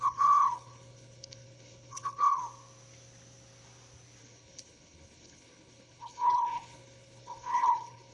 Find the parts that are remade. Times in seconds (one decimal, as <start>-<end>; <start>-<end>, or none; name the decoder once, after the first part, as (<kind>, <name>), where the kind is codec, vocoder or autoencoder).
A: 0.0-2.4 (codec, HILCodec); 4.2-8.1

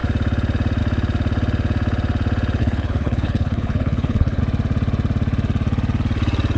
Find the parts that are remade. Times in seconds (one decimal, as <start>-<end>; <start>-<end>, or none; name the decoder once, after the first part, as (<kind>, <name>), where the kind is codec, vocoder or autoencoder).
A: 2.6-4.4 (codec, HILCodec)

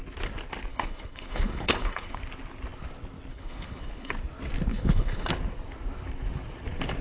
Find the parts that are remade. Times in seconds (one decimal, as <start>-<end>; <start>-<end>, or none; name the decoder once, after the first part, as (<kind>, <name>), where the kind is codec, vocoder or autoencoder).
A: 0.7-2.2 (codec, HILCodec); 3.3-4.1; 4.7-5.3

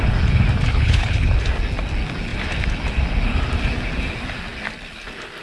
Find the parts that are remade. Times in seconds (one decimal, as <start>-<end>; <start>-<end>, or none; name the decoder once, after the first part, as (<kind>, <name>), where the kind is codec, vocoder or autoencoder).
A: 0.7-1.3 (codec, HILCodec)

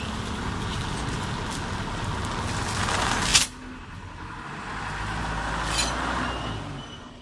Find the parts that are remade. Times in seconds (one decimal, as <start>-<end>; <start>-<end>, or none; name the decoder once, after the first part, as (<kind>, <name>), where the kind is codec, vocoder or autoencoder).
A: none

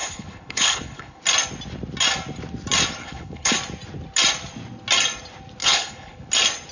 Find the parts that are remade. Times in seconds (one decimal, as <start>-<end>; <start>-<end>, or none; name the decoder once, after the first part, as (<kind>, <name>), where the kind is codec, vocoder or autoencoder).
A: 0.0-1.2 (codec, HILCodec); 3.0-3.5; 5.6-6.3

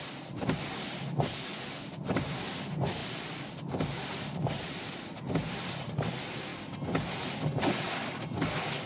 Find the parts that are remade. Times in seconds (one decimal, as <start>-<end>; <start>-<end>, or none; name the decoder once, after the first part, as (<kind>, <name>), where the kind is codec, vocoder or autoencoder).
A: none

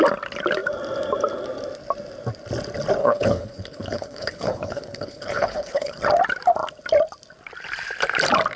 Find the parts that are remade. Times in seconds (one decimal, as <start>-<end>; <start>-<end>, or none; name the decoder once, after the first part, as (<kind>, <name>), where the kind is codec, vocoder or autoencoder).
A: 3.0-6.0 (codec, HILCodec)